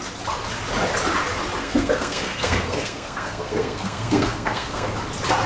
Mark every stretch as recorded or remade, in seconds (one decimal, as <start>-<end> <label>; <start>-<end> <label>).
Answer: 0.0-1.6 recorded; 1.6-4.9 remade; 4.9-5.5 recorded